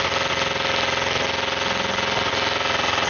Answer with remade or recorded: recorded